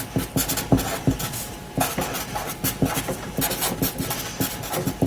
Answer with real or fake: real